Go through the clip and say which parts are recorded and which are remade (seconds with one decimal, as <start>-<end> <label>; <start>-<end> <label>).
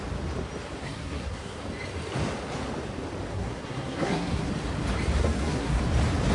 0.0-0.8 recorded; 0.8-1.6 remade; 1.6-3.3 recorded; 3.3-4.5 remade; 4.5-5.2 recorded; 5.2-5.8 remade; 5.8-6.3 recorded